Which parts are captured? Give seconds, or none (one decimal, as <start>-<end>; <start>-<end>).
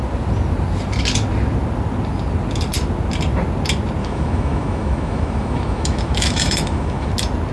0.0-4.0; 7.1-7.5